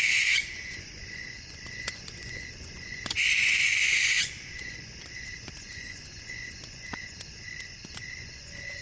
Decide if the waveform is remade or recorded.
remade